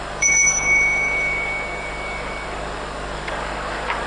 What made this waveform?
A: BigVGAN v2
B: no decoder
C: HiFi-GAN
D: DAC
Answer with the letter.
D